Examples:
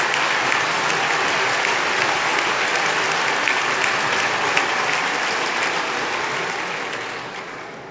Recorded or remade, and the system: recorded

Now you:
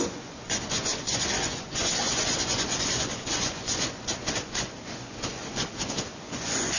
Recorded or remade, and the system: remade, vocoder, Vocos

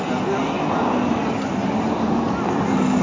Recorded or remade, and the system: recorded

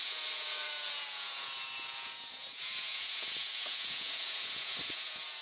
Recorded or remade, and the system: remade, vocoder, Vocos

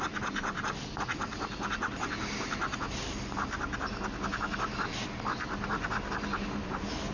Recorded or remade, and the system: recorded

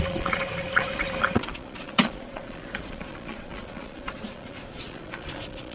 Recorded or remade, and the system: remade, vocoder, Vocos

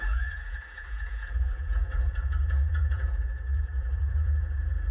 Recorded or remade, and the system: remade, vocoder, Vocos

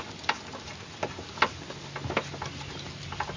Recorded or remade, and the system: recorded